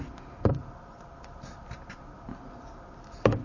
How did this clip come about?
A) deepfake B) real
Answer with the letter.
B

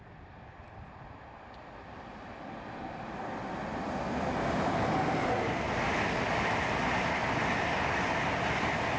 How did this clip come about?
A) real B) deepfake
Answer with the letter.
A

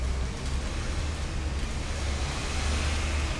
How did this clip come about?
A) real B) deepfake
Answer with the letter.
A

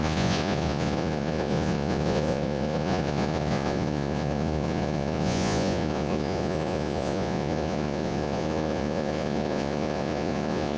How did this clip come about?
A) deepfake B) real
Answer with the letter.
A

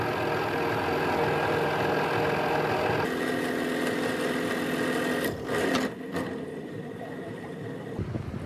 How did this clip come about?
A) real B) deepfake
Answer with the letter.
A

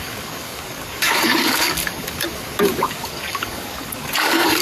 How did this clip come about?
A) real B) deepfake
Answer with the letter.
B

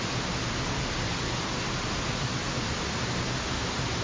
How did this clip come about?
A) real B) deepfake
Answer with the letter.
A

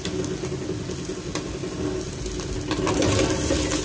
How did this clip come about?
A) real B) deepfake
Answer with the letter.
A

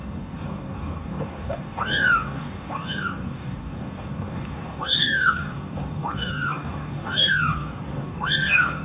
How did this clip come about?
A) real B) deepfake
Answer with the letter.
B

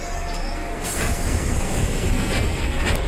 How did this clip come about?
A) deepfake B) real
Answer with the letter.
A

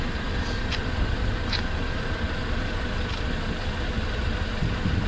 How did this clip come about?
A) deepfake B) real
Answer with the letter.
A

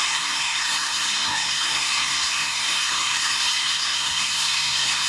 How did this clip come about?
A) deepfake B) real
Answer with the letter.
A